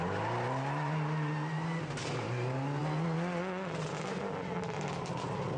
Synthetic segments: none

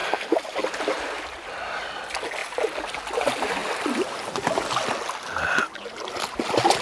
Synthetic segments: 0.0-1.5 (vocoder, BigVGAN v2); 2.4-3.0

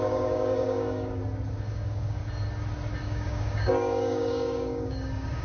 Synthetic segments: 0.0-1.2 (codec, DAC); 1.7-2.2; 3.0-5.4

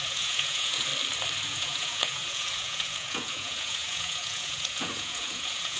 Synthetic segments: 0.0-0.9 (vocoder, Vocos); 1.4-5.8

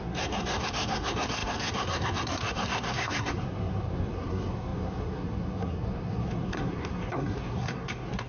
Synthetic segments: 0.0-8.3 (codec, SNAC)

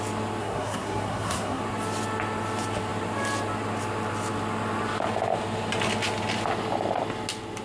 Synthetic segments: 0.4-1.6 (codec, SNAC)

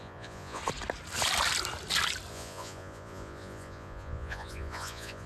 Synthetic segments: 0.0-0.6 (vocoder, Vocos); 2.3-5.3